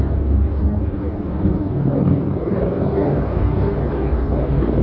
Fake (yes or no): yes